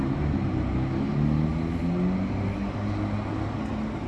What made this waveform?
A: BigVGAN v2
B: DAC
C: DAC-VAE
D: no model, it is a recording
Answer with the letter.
D